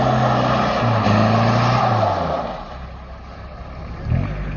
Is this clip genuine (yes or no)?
yes